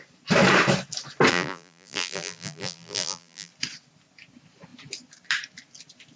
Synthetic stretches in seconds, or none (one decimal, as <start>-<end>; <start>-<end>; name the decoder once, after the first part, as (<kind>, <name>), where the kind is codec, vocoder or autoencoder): 1.3-3.5 (vocoder, BigVGAN v2)